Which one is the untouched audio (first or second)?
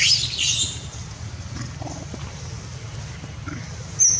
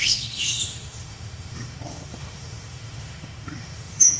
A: first